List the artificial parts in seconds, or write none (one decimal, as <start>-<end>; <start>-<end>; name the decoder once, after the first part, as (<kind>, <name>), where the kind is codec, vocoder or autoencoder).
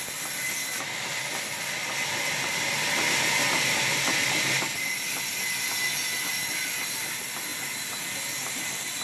none